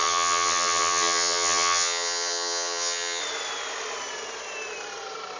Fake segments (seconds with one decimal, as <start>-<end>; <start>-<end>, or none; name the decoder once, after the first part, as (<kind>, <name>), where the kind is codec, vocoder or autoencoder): 0.0-3.2 (vocoder, HiFi-GAN)